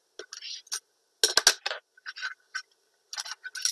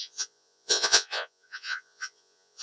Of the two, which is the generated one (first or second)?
second